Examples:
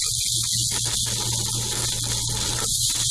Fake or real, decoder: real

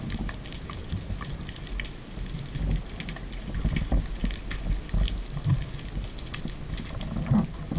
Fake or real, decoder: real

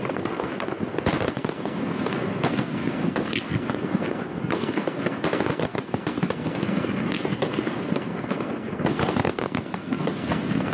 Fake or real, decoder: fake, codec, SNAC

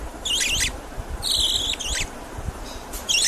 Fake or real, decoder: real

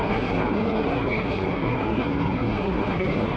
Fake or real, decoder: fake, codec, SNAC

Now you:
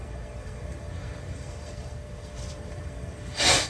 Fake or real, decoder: fake, codec, SNAC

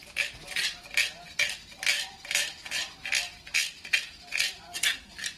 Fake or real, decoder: real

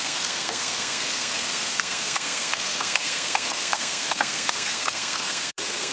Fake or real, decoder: fake, codec, SNAC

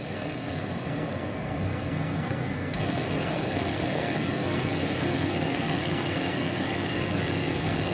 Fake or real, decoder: fake, codec, SNAC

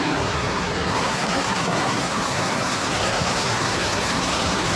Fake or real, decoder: fake, codec, SNAC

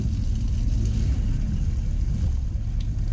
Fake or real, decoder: real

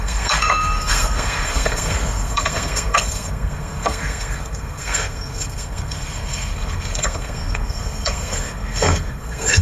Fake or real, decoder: fake, codec, SNAC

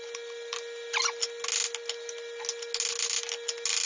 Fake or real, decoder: real